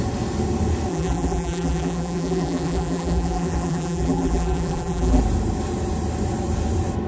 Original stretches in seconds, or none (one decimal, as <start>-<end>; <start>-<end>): 0.0-0.9; 5.2-7.1